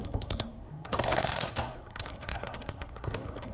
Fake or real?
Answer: fake